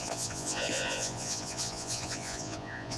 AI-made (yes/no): yes